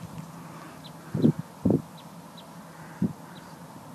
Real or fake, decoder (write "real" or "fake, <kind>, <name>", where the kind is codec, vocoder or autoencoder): real